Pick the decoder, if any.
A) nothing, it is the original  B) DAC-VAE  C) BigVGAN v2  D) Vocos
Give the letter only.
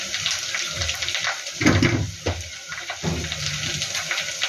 A